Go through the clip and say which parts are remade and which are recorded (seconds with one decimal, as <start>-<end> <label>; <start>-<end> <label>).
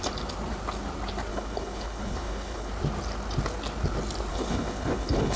0.0-1.3 recorded; 1.3-2.7 remade; 2.7-4.3 recorded; 4.3-5.4 remade